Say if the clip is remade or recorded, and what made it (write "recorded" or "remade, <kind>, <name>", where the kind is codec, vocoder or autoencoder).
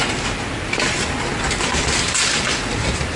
recorded